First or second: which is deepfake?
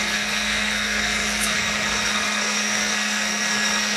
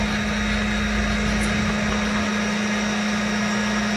first